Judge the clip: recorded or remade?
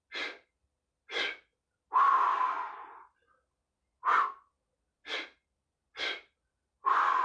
recorded